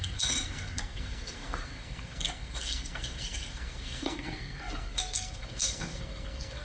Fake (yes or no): yes